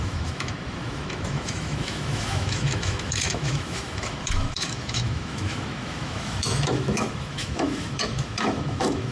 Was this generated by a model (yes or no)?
yes